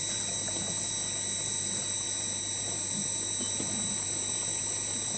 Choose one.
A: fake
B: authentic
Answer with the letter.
B